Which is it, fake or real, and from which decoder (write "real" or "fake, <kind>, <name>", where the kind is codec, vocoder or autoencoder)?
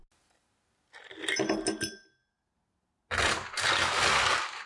real